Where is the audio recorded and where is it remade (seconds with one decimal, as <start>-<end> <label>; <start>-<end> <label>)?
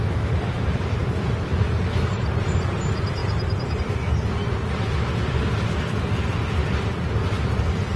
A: 0.0-8.0 recorded